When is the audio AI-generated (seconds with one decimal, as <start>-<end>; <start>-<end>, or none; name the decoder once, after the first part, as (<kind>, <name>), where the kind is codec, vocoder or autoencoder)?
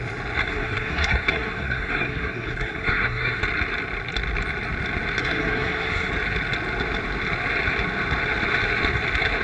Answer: 0.4-3.4 (codec, SNAC); 5.2-6.1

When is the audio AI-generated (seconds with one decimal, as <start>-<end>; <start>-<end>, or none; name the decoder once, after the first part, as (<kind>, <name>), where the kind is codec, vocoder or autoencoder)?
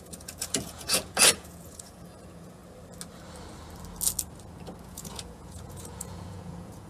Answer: 0.0-2.6 (vocoder, Vocos); 4.8-6.9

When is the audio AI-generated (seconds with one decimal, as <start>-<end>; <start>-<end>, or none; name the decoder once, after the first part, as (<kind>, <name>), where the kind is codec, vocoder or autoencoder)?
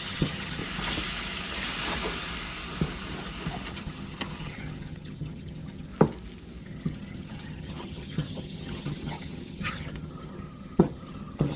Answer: 0.0-0.6 (vocoder, HiFi-GAN); 3.7-5.9; 6.6-11.6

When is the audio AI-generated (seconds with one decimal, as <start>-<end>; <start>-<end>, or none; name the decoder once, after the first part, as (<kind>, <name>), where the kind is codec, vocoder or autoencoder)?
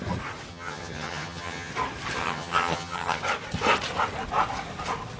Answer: 0.5-1.7 (vocoder, HiFi-GAN); 2.2-3.2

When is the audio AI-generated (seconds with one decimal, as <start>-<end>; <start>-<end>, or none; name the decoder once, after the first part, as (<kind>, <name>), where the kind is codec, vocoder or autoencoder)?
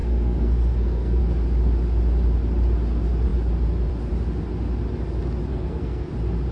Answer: 0.0-1.2 (codec, SNAC); 5.5-6.1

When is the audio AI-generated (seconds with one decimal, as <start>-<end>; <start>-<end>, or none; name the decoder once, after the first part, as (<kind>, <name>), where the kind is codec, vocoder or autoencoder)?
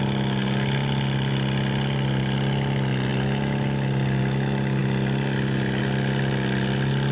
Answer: none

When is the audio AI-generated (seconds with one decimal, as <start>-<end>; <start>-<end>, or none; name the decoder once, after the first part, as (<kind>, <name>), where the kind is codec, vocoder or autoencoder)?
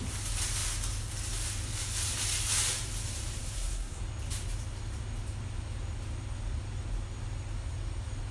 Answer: 3.4-4.0 (codec, SNAC)